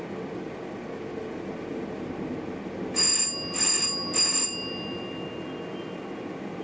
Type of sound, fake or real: real